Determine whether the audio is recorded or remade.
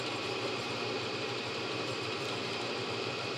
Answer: remade